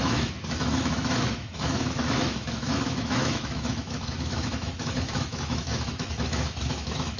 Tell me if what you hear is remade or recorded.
remade